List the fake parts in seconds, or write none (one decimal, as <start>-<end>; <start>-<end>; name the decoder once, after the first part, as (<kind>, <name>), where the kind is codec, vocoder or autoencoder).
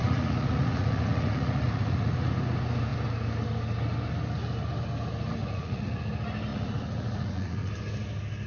0.0-2.3 (vocoder, Vocos); 5.4-6.0; 6.5-7.7